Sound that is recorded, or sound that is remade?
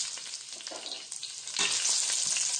recorded